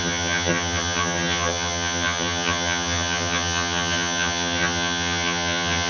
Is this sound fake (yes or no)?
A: yes